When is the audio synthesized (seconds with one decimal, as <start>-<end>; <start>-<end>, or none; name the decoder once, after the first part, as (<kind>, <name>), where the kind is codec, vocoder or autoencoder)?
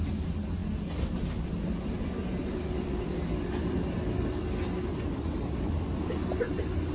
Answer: none